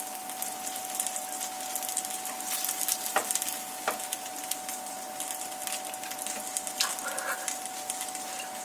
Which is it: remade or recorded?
recorded